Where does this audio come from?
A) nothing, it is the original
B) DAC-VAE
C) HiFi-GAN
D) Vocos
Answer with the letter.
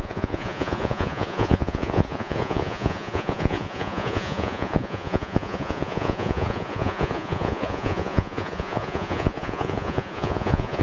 D